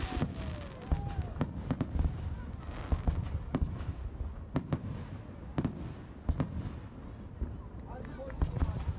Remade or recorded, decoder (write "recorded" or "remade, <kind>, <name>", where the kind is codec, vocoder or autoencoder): recorded